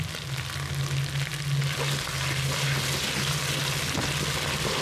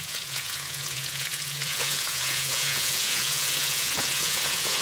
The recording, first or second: first